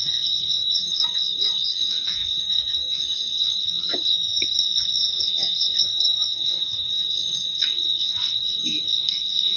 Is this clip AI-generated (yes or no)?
yes